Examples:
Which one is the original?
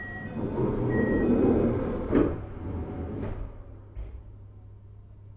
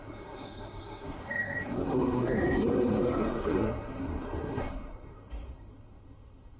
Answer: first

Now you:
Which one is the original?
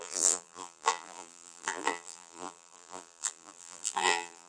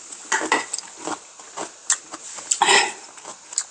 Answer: second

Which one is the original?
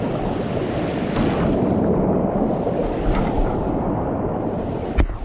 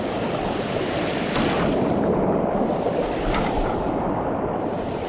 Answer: first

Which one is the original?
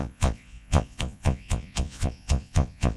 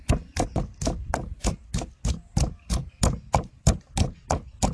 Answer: second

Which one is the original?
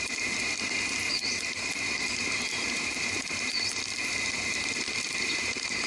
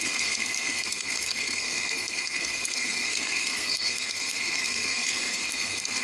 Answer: first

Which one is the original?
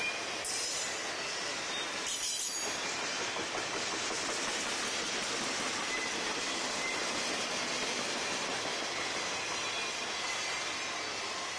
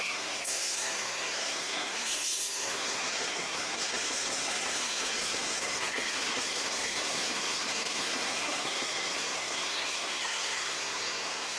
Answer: first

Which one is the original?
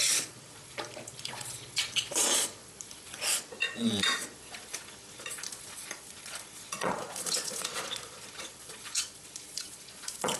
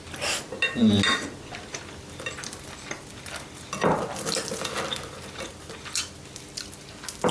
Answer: second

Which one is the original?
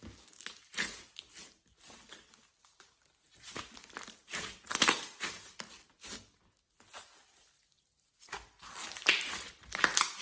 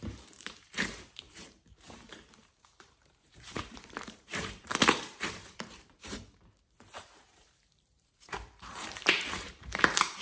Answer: first